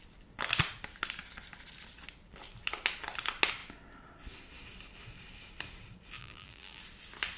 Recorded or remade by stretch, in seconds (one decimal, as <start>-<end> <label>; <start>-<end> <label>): 0.0-6.2 recorded; 6.2-6.8 remade; 6.8-7.4 recorded